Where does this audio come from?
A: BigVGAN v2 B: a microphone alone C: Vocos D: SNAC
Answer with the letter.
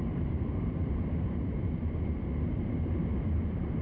A